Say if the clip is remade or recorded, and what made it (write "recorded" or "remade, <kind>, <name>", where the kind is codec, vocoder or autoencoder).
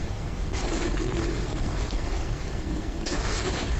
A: remade, codec, SNAC